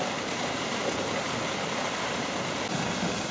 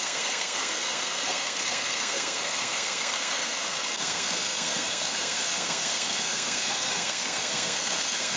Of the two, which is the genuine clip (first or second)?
first